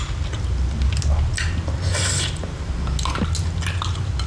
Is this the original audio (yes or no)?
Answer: yes